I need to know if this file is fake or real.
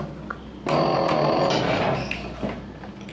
real